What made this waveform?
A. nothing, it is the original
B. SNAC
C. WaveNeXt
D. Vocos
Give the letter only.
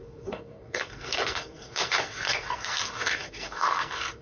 B